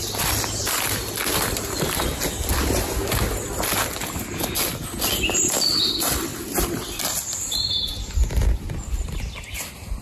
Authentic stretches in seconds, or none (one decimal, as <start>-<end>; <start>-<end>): 0.0-6.3; 7.9-10.0